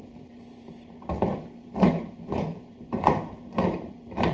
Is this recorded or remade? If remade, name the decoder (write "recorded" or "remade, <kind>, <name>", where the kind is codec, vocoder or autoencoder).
remade, vocoder, BigVGAN v2